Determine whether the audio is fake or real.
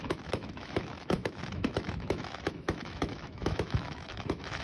fake